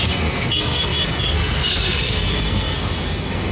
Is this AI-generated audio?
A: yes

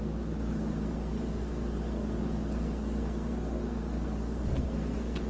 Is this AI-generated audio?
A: yes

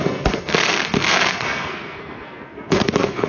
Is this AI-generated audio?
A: yes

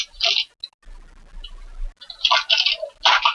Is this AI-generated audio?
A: no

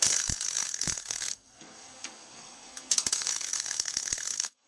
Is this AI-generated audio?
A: yes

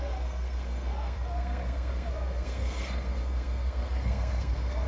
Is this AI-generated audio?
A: yes